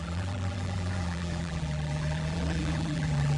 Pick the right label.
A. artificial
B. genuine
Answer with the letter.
A